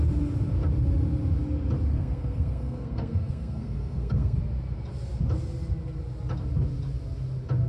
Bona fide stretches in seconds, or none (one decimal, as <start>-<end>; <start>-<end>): 0.0-1.9; 4.4-7.7